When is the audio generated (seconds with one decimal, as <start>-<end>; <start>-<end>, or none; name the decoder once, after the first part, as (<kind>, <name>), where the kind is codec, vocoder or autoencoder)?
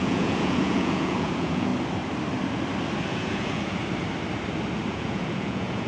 0.0-1.7 (vocoder, Vocos); 3.1-3.8; 4.9-5.9